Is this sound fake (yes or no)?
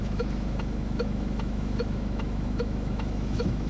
yes